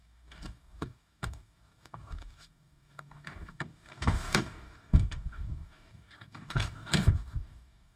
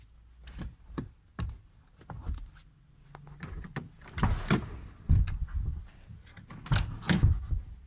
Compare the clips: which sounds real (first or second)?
second